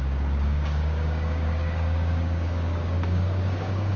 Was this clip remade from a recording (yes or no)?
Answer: yes